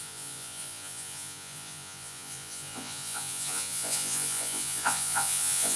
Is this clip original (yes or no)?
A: no